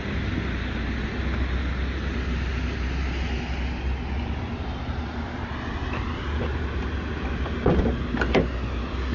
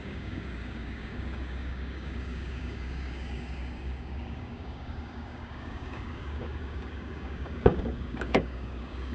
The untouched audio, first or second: first